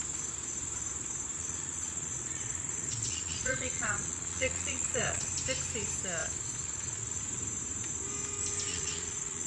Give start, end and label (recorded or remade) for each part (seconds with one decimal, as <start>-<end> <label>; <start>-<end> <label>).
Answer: 0.0-1.3 recorded; 1.3-5.3 remade; 5.3-6.2 recorded; 6.2-7.2 remade; 7.2-8.7 recorded; 8.7-9.5 remade